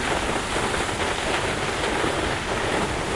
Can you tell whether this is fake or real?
real